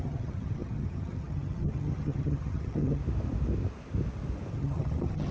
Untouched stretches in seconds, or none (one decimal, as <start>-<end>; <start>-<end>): 3.0-4.5

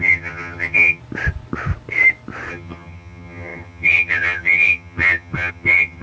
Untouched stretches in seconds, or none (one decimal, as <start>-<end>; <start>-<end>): 1.0-2.5